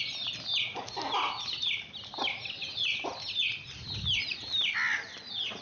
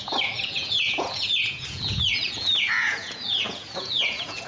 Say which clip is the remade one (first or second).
second